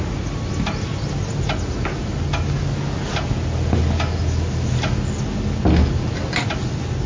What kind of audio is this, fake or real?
real